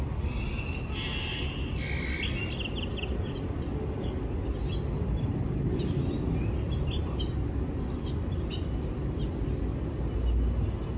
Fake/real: real